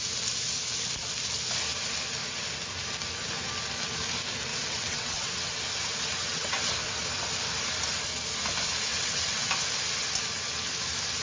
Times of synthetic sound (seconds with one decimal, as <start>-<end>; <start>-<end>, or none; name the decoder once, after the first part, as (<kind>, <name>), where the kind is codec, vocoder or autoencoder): 4.5-5.3 (vocoder, WaveNeXt); 6.2-6.7; 8.9-9.5